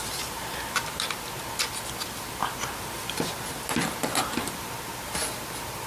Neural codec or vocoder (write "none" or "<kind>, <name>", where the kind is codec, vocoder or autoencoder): none